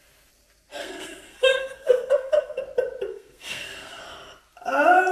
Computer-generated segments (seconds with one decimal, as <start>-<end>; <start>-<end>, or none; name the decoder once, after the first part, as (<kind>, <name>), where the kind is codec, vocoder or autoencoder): 0.8-2.6 (codec, SNAC); 3.1-4.0